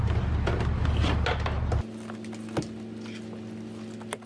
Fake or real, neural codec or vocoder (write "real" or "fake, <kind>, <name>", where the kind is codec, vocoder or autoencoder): real